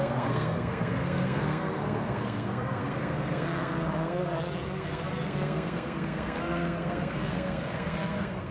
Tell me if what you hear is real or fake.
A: fake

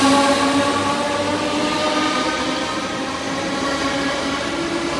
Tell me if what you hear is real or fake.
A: real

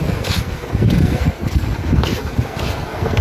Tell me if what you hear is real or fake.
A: fake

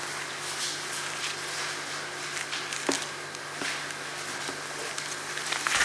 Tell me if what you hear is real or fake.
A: real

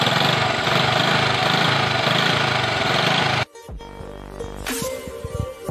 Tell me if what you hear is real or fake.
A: real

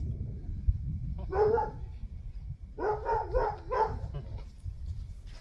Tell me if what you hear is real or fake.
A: real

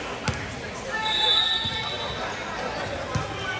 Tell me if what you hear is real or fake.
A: real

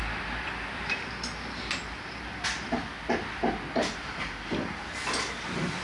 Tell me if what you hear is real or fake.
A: real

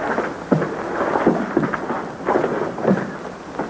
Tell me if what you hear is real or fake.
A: real